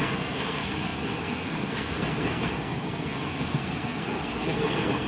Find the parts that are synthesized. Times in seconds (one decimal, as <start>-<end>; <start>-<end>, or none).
0.0-5.1